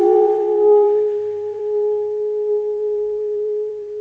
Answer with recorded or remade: remade